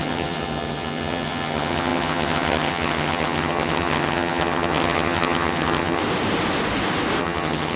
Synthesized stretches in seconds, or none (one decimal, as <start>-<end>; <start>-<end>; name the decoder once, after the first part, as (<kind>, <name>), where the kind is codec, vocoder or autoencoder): 0.0-6.0 (vocoder, HiFi-GAN); 7.2-7.8